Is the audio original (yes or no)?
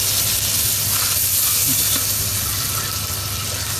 yes